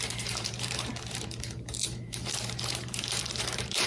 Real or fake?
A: fake